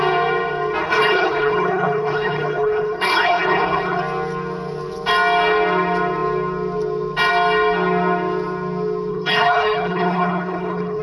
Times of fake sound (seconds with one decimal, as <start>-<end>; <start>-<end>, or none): 0.8-4.0; 9.1-11.0